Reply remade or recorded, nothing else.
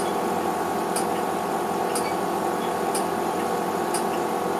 recorded